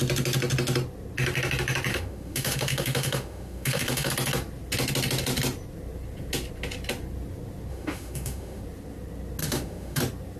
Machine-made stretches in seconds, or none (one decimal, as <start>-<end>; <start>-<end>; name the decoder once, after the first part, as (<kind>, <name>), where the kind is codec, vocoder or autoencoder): 1.9-4.1 (autoencoder, DAC-VAE); 7.7-8.6; 9.4-10.0